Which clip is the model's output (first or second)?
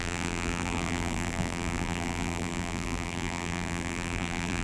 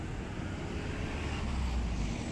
first